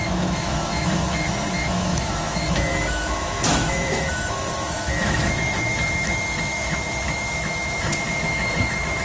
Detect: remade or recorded remade